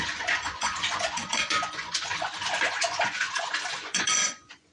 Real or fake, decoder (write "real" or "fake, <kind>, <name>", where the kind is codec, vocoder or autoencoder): fake, vocoder, Vocos